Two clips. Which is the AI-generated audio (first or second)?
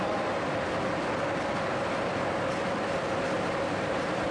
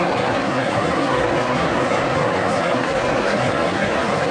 second